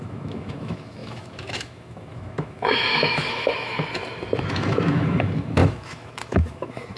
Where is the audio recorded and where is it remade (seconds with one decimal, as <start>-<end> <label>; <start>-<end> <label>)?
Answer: 0.0-4.0 remade; 4.0-4.5 recorded; 4.5-7.0 remade